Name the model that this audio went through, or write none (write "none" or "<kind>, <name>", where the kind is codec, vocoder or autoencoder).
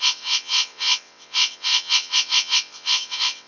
vocoder, WaveNeXt